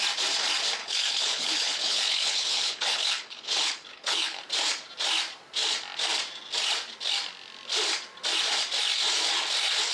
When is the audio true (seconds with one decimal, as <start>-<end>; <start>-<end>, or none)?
0.0-0.8; 4.4-9.9